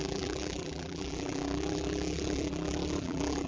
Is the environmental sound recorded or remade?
remade